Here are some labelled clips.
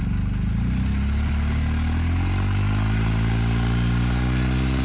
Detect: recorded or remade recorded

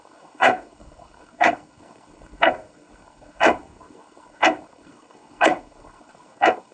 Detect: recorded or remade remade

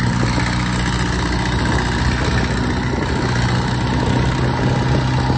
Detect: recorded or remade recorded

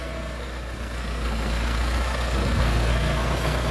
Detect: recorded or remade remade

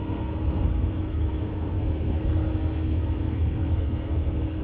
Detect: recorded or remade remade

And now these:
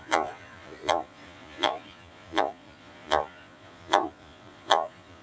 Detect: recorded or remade remade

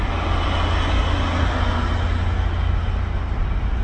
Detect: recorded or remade recorded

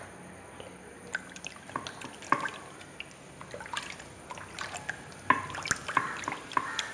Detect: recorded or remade recorded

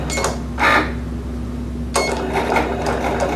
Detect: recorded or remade recorded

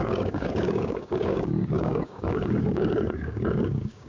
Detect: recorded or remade remade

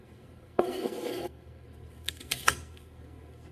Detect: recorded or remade remade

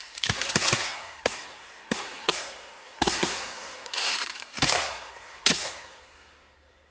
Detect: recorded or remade remade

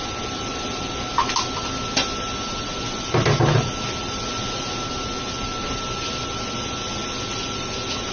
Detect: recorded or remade recorded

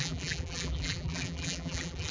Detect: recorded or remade remade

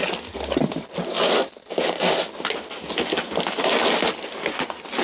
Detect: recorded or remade recorded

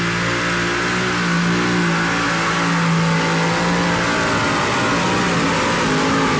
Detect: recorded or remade recorded